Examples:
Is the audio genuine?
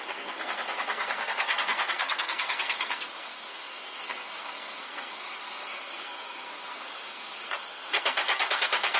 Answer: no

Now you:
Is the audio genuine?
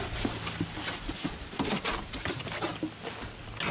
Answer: yes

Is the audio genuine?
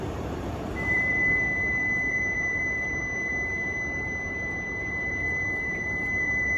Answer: no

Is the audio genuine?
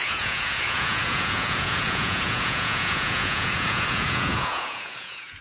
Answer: no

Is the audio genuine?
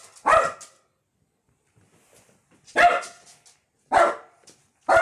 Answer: yes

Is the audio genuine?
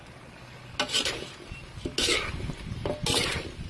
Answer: yes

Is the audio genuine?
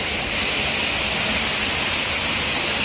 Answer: yes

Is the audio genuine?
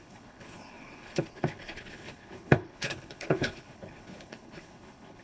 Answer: no